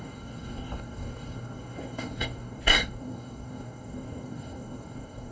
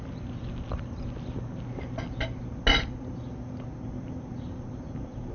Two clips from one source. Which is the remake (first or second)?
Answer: first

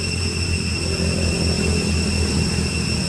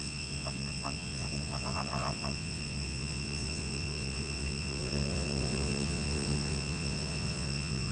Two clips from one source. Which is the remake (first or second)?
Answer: second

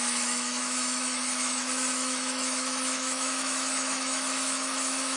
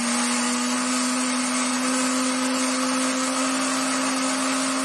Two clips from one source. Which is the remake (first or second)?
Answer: first